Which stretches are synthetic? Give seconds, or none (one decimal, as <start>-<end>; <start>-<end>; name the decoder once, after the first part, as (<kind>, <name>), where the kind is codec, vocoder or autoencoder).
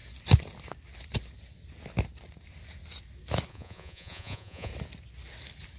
3.5-4.7 (vocoder, Vocos)